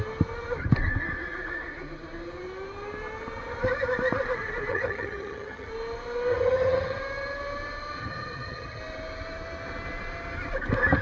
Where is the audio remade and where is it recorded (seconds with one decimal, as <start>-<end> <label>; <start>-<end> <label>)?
0.0-4.7 recorded; 4.7-5.7 remade; 5.7-6.3 recorded; 6.3-7.0 remade; 7.0-8.0 recorded; 8.0-8.8 remade; 8.8-11.0 recorded